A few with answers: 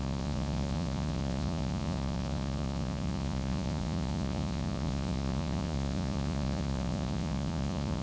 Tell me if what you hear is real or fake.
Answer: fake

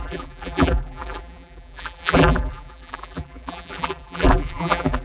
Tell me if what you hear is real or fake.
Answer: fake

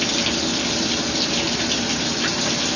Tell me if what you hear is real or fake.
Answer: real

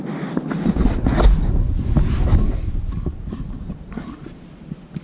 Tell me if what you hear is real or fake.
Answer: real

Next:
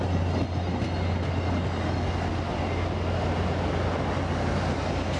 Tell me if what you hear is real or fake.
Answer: real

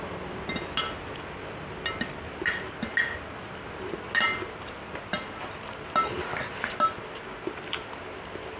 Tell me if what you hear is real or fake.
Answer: real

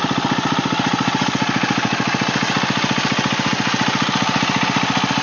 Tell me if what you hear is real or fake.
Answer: real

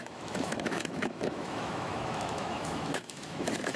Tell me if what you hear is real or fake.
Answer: fake